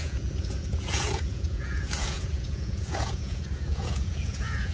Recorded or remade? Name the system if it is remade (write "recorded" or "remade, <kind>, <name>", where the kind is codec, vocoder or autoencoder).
remade, vocoder, Vocos